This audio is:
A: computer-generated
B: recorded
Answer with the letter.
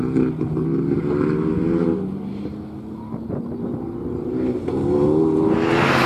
B